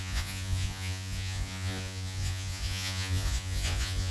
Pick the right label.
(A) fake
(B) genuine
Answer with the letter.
A